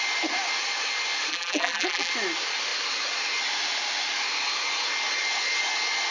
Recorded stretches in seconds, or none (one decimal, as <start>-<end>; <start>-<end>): 0.0-1.3; 2.1-6.1